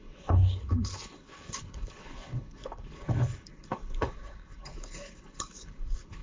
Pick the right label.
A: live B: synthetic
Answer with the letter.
B